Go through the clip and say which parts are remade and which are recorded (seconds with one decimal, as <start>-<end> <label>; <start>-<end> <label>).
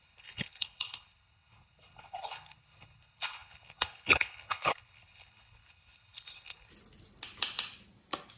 0.0-6.7 remade; 6.7-8.4 recorded